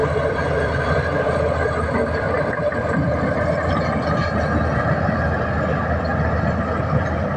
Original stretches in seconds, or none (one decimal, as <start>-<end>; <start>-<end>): 4.2-5.5; 6.1-6.7